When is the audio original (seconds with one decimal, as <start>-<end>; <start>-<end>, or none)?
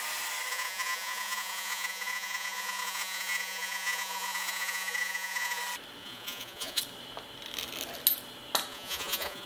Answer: 0.0-0.5; 5.6-6.0; 6.8-8.7